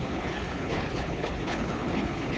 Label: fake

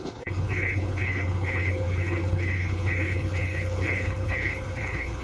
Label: fake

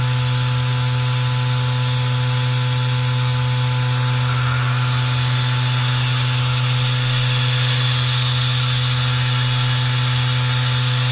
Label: real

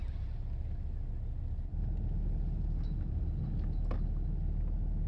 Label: real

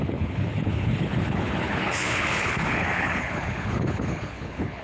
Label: fake